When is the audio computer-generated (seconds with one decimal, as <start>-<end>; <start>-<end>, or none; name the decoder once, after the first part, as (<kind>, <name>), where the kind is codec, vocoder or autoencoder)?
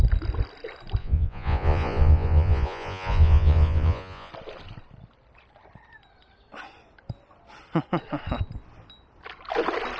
1.0-4.3 (vocoder, Vocos)